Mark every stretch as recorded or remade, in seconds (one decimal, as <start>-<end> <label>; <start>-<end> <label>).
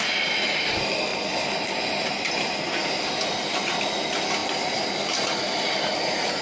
0.0-4.4 recorded; 4.4-5.9 remade; 5.9-6.4 recorded